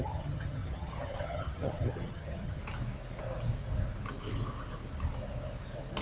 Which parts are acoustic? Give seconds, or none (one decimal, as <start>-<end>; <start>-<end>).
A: 2.6-6.0